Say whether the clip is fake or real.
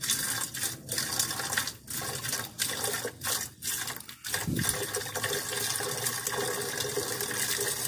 real